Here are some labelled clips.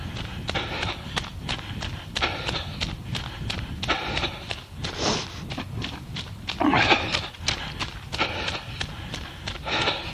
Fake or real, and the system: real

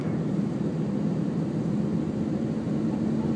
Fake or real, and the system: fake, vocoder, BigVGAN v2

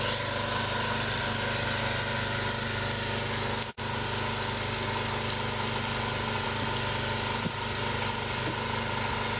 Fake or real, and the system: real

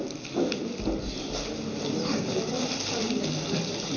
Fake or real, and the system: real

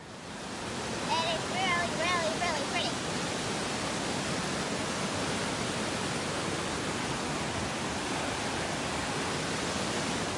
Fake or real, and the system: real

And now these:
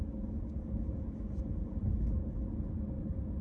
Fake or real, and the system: fake, vocoder, Vocos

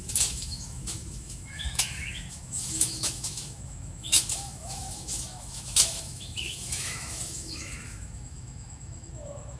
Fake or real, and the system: fake, autoencoder, DAC-VAE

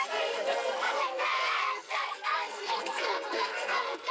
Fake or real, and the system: fake, codec, SNAC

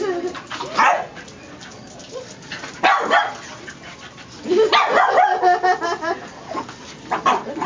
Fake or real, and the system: real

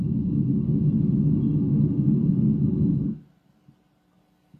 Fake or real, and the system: real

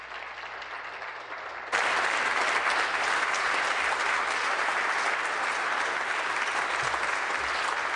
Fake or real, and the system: real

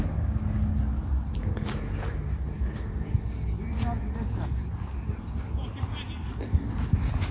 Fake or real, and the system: real